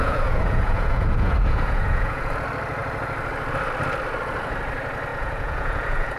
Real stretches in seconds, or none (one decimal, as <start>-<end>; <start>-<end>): 2.3-5.1